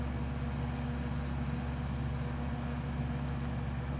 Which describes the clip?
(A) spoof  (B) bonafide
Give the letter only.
B